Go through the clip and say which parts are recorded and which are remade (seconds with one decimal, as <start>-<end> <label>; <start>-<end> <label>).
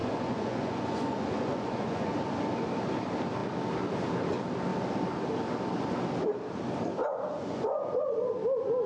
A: 0.0-2.1 remade; 2.1-7.0 recorded; 7.0-8.3 remade; 8.3-8.9 recorded